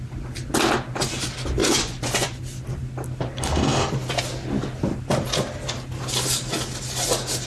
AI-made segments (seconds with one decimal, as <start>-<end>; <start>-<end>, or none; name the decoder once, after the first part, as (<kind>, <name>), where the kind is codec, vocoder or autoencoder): 1.6-2.4 (vocoder, Vocos)